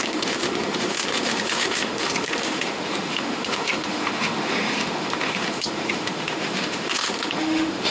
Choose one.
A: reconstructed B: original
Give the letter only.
A